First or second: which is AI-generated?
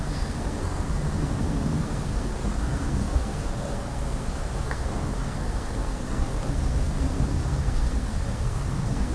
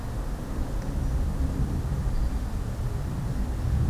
first